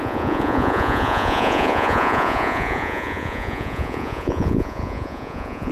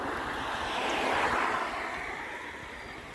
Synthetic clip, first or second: first